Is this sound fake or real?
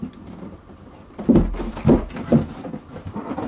fake